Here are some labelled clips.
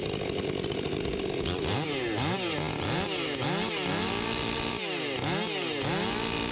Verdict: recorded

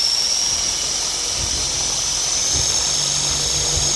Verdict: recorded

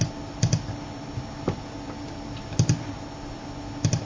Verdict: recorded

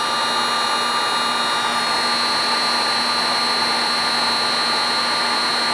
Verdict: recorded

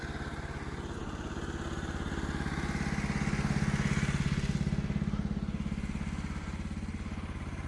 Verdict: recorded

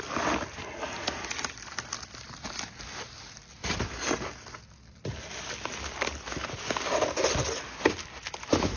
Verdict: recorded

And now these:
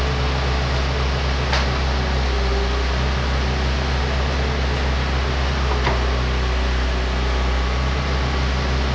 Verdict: recorded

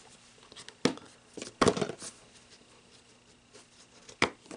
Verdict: recorded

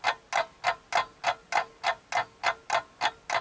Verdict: recorded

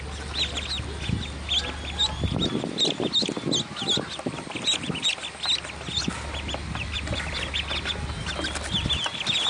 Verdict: recorded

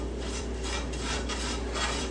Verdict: remade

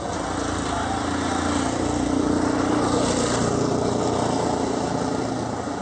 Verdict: recorded